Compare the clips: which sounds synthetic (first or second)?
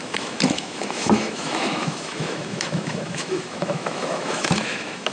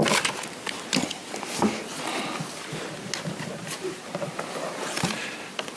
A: first